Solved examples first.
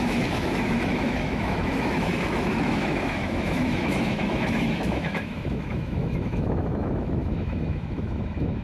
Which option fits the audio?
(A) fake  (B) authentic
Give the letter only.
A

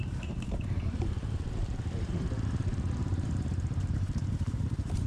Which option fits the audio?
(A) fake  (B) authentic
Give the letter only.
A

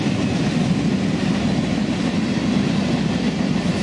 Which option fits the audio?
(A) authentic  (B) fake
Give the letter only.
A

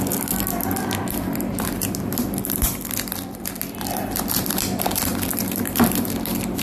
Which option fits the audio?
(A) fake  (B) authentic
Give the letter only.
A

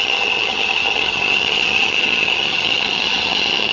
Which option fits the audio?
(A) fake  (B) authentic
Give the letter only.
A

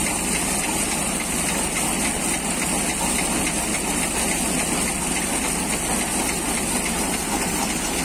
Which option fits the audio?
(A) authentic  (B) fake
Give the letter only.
A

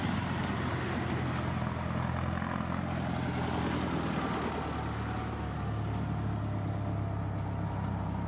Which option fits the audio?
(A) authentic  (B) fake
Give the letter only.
A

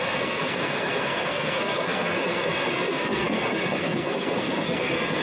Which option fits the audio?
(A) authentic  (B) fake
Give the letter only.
B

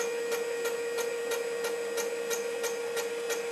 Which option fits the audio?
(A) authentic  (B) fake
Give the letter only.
A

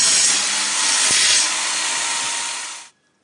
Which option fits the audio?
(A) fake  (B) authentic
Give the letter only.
B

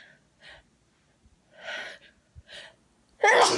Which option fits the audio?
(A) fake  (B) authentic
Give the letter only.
B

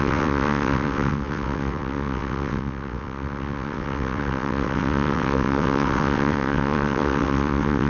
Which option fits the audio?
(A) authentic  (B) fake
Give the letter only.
B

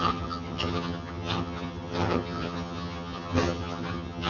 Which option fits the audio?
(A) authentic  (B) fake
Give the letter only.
B